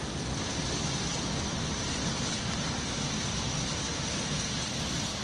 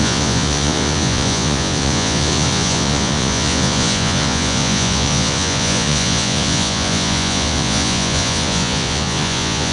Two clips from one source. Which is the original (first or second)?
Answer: first